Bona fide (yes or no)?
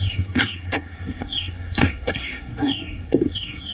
no